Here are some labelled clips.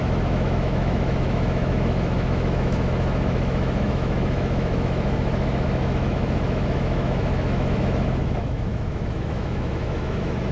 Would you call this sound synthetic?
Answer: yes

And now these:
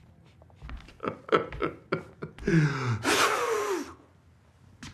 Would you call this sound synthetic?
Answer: no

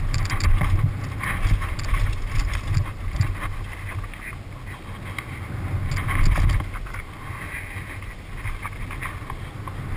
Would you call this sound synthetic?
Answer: no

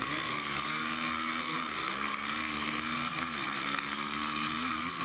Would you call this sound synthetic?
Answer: yes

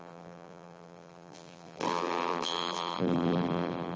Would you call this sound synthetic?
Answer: yes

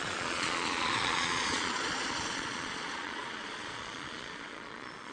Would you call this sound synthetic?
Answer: yes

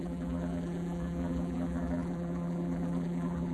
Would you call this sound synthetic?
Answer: yes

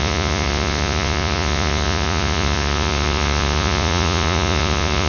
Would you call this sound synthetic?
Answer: yes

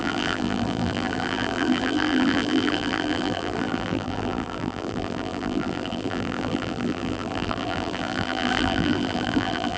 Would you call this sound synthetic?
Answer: yes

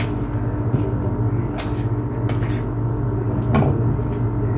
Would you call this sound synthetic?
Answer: no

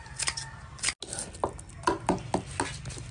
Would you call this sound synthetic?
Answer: no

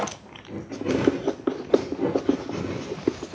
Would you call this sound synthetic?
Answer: no